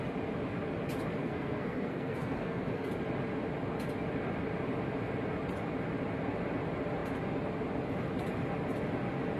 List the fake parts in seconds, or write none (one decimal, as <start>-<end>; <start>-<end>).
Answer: 1.2-2.9